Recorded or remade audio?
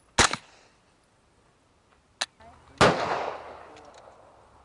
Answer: recorded